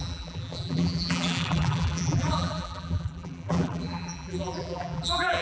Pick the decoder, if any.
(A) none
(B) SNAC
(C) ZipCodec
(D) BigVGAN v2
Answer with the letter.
D